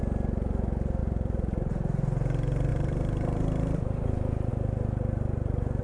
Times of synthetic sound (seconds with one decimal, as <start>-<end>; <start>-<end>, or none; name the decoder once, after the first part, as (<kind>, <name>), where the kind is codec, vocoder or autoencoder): 1.0-1.7 (vocoder, BigVGAN v2); 2.7-4.5